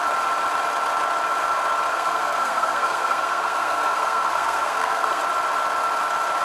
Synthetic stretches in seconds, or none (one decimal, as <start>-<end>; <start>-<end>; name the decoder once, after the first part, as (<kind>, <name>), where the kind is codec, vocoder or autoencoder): 1.9-5.2 (codec, SNAC)